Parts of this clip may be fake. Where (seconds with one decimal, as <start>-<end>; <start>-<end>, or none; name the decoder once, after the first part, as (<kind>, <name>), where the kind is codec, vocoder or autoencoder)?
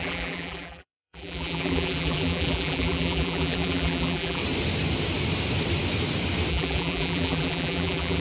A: 0.0-4.4 (vocoder, BigVGAN v2); 6.5-8.2